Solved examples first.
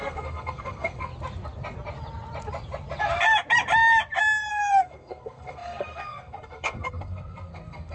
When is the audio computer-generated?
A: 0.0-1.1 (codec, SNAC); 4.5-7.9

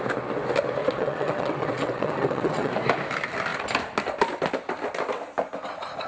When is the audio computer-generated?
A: 0.8-2.7 (vocoder, WaveNeXt)

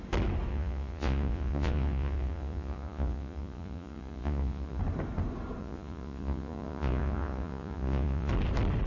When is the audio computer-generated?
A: 0.5-4.8 (vocoder, Vocos); 5.6-8.3

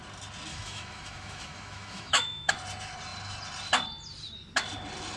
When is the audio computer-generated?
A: 0.5-2.5 (autoencoder, DAC-VAE)

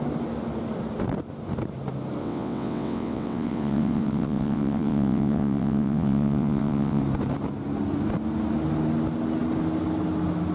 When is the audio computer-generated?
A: 2.2-7.0 (vocoder, WaveNeXt)

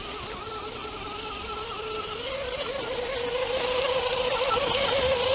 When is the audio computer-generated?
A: none